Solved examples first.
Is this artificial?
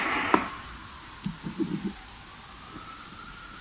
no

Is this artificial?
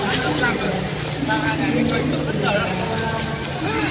no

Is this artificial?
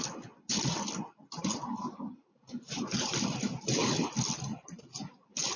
no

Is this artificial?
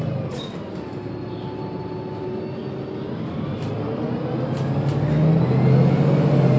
no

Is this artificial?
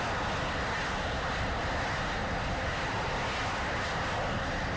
no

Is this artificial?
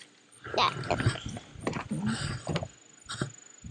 no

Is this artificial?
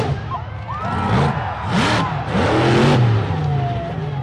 no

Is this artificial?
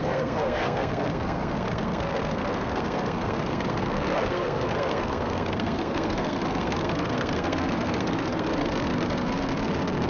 yes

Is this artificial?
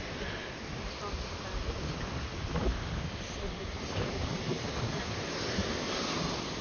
no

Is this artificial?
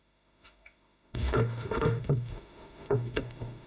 yes